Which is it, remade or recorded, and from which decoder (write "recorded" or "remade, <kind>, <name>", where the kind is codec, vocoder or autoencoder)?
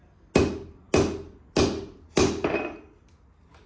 recorded